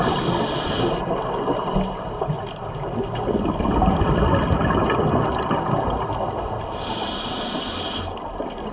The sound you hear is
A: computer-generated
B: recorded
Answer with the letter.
B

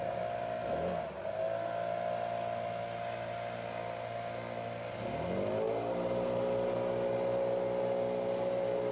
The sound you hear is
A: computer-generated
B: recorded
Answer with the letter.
B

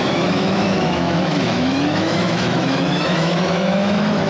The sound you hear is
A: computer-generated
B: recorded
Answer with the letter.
A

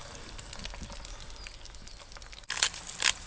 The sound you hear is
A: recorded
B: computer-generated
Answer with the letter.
A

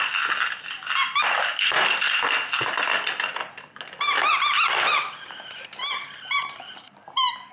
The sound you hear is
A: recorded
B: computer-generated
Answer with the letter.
A